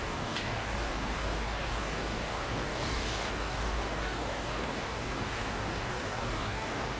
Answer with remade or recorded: remade